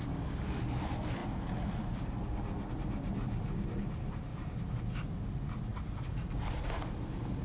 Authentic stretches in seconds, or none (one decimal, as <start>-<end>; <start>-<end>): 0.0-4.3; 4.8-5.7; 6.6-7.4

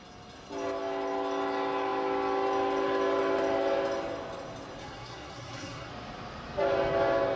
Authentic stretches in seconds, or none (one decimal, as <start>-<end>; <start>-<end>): 0.0-4.8; 5.9-7.4

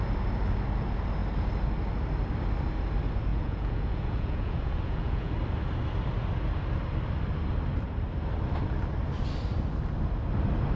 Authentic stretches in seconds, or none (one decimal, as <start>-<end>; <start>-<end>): 0.0-3.3; 5.3-10.8

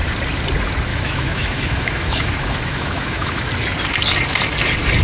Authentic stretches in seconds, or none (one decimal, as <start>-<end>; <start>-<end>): 0.0-0.9; 3.5-5.0

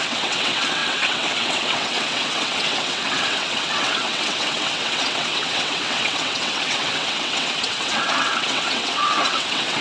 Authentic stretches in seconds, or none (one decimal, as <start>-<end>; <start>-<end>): none

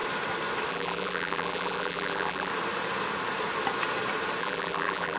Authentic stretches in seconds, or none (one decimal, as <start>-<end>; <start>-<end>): 0.0-0.7; 2.5-4.4

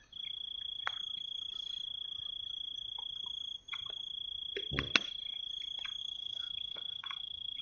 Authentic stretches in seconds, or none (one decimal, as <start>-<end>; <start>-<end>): 0.0-6.0